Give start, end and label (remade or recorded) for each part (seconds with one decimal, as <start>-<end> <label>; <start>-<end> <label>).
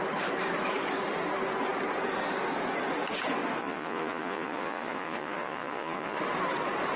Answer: 0.0-3.6 recorded; 3.6-6.2 remade; 6.2-7.0 recorded